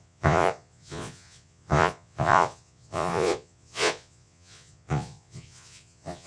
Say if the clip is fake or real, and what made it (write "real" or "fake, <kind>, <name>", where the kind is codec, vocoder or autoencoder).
fake, vocoder, Vocos